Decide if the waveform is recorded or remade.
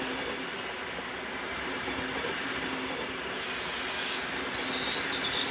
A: recorded